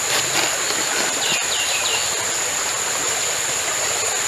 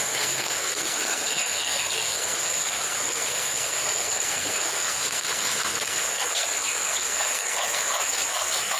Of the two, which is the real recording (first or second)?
first